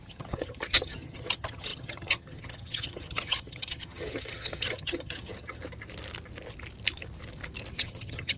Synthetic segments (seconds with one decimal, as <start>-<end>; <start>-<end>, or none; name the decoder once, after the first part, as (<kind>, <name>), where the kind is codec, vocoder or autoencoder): 0.0-5.6 (vocoder, HiFi-GAN); 7.8-8.4